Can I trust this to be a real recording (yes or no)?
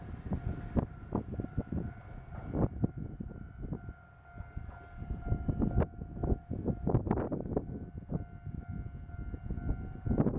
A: yes